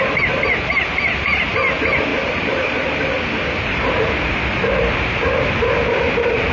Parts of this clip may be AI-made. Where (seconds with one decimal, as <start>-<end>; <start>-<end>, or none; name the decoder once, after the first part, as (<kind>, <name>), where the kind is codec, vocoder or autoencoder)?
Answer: 2.1-3.0 (vocoder, BigVGAN v2)